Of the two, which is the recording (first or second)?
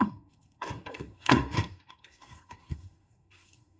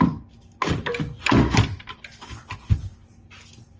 second